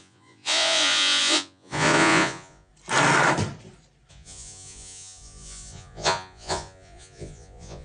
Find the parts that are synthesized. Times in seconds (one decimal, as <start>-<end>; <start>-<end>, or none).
0.0-2.7; 4.1-7.8